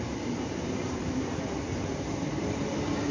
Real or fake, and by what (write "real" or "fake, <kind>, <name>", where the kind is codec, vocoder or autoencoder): fake, vocoder, BigVGAN v2